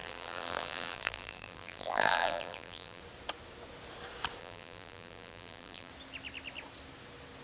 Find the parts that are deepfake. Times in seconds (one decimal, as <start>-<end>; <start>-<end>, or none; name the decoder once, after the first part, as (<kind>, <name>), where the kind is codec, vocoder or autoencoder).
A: 0.0-3.0 (vocoder, BigVGAN v2); 4.4-5.9